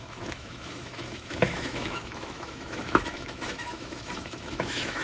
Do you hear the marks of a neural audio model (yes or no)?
yes